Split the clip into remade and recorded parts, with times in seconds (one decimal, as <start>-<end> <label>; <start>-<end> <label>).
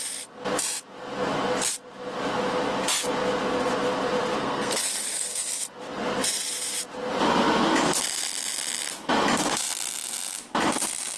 0.0-4.4 recorded; 4.4-5.5 remade; 5.5-11.2 recorded